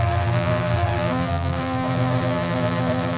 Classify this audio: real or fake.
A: fake